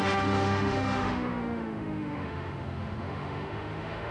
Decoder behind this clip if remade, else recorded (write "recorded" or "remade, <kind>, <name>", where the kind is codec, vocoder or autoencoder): remade, autoencoder, DAC-VAE